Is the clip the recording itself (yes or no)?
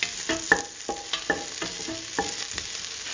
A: yes